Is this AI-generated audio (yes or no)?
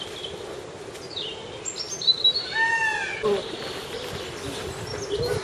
no